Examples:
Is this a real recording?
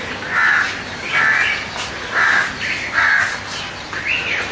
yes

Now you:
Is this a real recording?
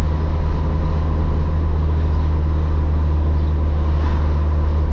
yes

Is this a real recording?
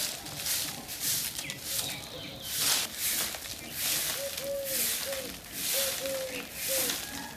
yes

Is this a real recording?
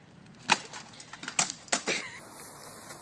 yes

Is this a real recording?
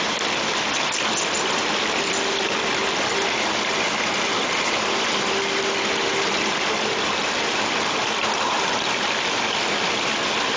yes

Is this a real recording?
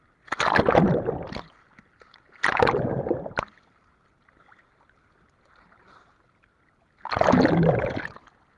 yes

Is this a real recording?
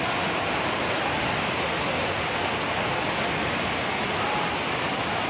yes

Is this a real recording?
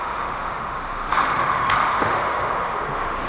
no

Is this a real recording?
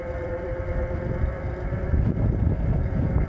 no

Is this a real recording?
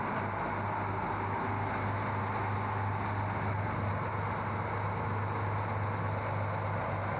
yes